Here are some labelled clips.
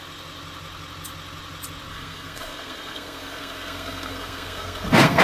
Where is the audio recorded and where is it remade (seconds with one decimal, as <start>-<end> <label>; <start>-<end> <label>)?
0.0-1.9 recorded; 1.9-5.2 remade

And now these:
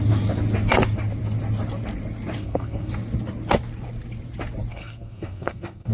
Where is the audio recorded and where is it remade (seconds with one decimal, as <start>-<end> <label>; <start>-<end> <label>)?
0.0-2.4 recorded; 2.4-2.9 remade; 2.9-4.7 recorded; 4.7-5.9 remade

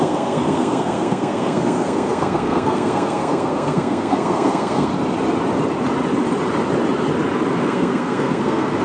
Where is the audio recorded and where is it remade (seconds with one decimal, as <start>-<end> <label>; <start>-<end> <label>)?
0.0-4.9 remade; 4.9-7.5 recorded; 7.5-8.8 remade

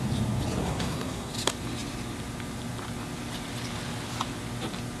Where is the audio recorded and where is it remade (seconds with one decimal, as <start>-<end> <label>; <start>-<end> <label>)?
0.0-0.6 recorded; 0.6-1.3 remade; 1.3-5.0 recorded

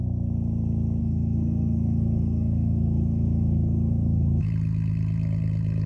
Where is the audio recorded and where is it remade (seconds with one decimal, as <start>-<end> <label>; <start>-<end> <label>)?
0.0-1.0 recorded; 1.0-4.5 remade; 4.5-5.9 recorded

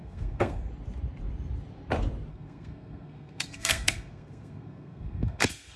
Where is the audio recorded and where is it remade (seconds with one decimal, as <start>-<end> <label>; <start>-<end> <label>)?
0.0-0.7 remade; 0.7-2.3 recorded; 2.3-5.8 remade